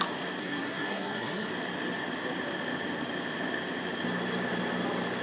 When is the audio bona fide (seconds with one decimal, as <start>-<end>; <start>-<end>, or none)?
0.0-0.4; 1.5-5.2